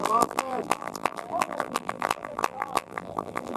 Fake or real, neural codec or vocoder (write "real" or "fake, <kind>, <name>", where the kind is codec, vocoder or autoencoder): fake, vocoder, BigVGAN v2